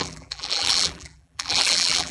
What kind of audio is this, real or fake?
fake